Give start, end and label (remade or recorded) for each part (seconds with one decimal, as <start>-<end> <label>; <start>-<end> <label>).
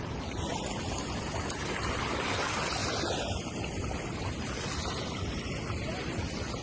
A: 0.0-6.6 recorded